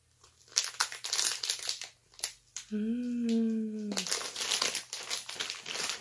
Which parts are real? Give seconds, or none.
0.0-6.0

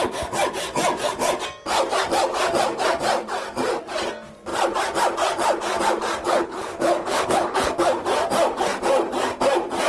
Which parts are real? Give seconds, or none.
0.0-6.2; 7.7-9.9

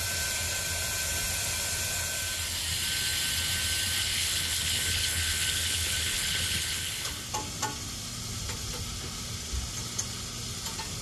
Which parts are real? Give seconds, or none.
0.0-4.0; 7.1-11.0

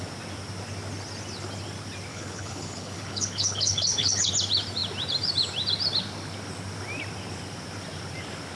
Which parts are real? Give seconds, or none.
0.0-2.1; 4.3-8.6

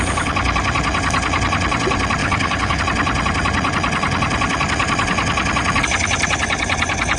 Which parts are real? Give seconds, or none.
0.0-2.2; 2.8-7.2

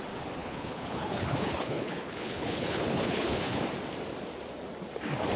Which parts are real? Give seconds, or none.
0.0-0.4; 3.6-5.4